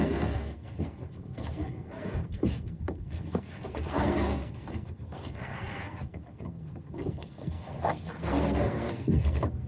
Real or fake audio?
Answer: fake